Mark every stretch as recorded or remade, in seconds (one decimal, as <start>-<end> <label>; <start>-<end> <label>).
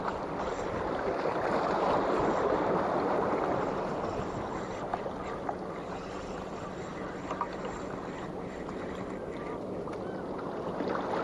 0.0-11.2 recorded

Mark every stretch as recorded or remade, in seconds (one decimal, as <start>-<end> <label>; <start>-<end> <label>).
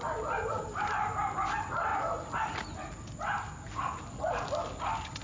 0.0-5.2 recorded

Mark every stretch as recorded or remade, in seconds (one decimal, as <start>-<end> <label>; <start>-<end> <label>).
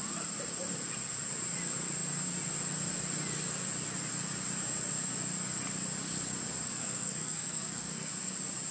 0.0-6.8 recorded; 6.8-8.1 remade; 8.1-8.7 recorded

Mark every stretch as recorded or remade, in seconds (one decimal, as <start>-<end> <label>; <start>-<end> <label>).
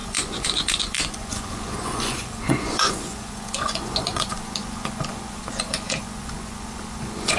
0.0-7.4 remade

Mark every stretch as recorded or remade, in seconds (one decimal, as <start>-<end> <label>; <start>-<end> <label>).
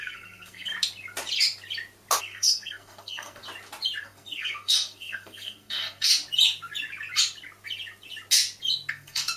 0.0-0.7 remade; 0.7-2.2 recorded; 2.2-3.4 remade; 3.4-4.0 recorded; 4.0-6.1 remade; 6.1-8.9 recorded; 8.9-9.4 remade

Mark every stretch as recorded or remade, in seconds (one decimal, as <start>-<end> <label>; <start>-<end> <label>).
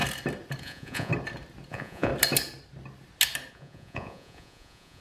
0.0-0.6 recorded; 0.6-1.1 remade; 1.1-1.7 recorded; 1.7-2.1 remade; 2.1-3.5 recorded; 3.5-5.0 remade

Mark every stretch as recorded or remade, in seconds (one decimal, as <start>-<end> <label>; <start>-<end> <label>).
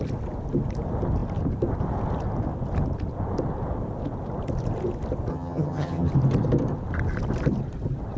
0.0-5.3 recorded; 5.3-6.1 remade; 6.1-8.2 recorded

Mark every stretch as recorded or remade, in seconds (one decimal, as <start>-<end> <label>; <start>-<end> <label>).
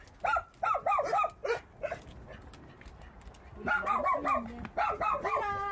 0.0-5.7 recorded